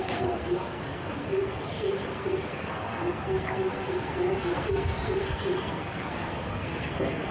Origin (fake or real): fake